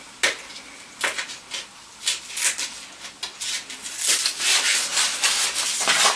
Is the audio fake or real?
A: real